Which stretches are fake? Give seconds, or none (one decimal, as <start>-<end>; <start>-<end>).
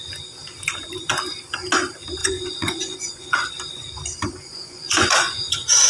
2.2-3.5; 4.3-5.9